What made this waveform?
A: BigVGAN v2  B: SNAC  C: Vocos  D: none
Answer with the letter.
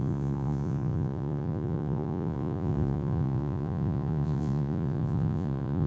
C